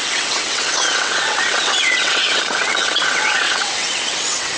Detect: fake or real fake